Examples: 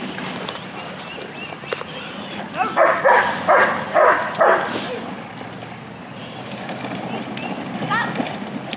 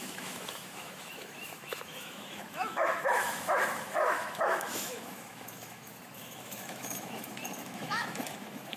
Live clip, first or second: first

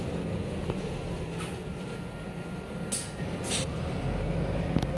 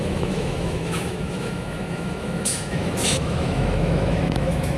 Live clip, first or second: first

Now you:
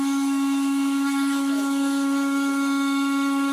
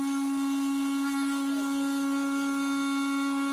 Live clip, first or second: second